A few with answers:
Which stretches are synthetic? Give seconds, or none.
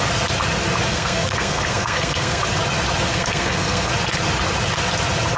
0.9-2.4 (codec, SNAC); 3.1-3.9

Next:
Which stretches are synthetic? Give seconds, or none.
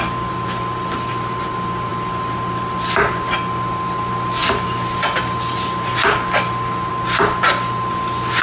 none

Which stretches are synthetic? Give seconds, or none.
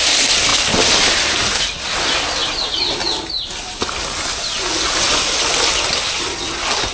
none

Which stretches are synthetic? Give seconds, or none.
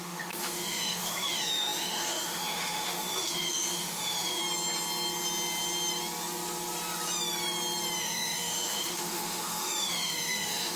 0.0-4.4 (autoencoder, DAC-VAE); 8.0-10.8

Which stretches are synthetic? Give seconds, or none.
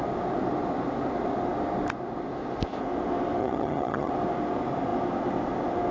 3.4-4.1 (vocoder, HiFi-GAN)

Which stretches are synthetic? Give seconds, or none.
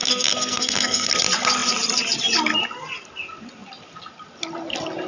0.0-1.1 (codec, SNAC)